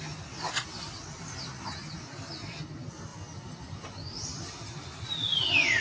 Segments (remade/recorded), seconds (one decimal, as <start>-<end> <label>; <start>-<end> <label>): 0.0-5.8 recorded